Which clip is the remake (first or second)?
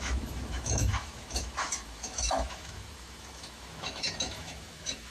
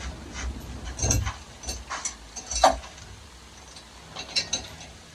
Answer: first